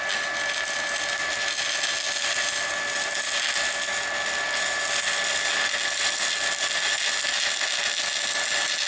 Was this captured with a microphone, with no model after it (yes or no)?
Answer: yes